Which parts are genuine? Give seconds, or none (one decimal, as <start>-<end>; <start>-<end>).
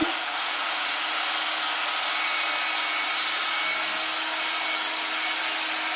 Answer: 1.1-6.0